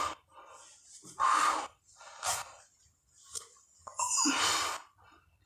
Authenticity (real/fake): real